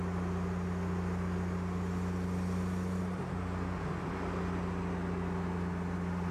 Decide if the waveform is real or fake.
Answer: real